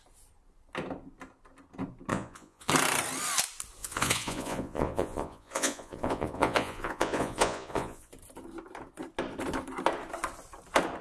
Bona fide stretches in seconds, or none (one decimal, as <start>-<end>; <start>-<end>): 0.0-2.1; 2.7-3.8; 8.1-11.0